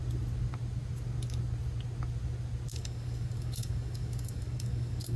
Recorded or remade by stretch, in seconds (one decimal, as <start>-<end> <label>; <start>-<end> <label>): 0.0-2.7 recorded; 2.7-5.2 remade